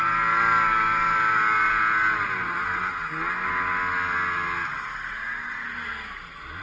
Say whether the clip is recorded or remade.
recorded